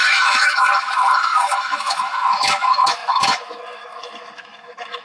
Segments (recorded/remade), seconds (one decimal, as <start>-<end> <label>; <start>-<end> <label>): 0.0-5.0 remade